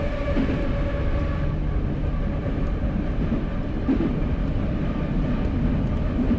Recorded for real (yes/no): yes